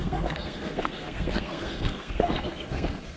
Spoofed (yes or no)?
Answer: yes